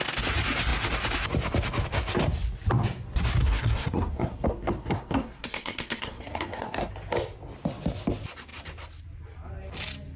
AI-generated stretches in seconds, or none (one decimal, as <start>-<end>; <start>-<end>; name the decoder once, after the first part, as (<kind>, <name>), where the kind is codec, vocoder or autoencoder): 3.4-6.9 (codec, SNAC)